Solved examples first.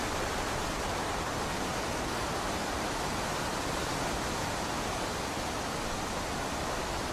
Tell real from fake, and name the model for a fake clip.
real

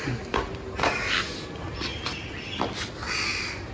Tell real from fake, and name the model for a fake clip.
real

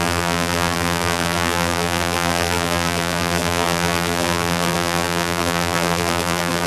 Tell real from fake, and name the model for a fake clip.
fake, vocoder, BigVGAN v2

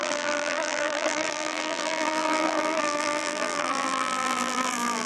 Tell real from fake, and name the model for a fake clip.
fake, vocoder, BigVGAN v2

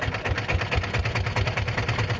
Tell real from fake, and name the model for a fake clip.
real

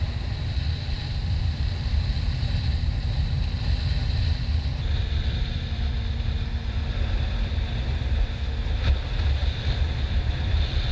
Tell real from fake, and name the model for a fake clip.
fake, vocoder, BigVGAN v2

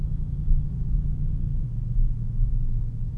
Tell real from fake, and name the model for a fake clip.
real